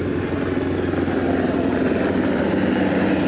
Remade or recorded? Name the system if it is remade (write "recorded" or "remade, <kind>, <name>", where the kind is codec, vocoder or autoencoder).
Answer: recorded